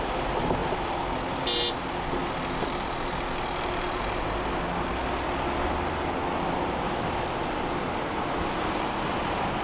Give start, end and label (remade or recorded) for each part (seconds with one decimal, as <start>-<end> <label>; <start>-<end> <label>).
0.0-9.6 recorded